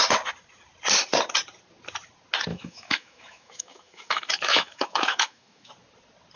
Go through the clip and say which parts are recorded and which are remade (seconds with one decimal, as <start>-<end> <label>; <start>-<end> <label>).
0.0-2.5 recorded; 2.5-5.7 remade; 5.7-6.4 recorded